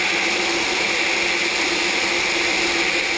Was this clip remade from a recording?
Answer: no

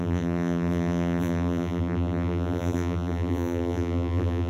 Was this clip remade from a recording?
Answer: yes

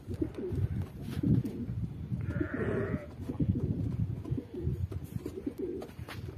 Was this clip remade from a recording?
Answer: yes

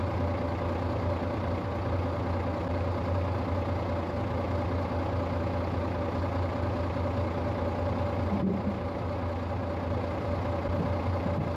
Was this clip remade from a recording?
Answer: no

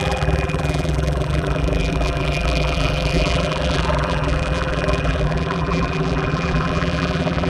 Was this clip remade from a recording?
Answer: yes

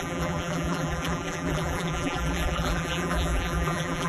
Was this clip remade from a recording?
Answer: yes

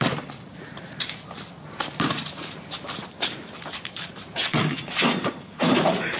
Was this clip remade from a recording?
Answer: yes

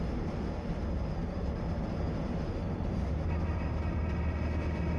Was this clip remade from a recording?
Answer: no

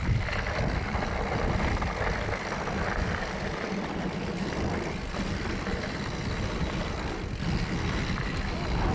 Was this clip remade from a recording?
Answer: yes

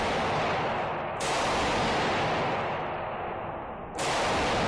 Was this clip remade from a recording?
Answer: no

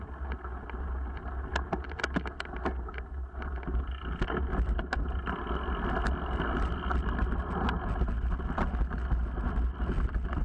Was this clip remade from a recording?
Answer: no